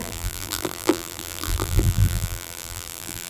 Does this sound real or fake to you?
fake